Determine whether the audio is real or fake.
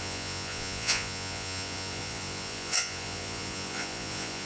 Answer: fake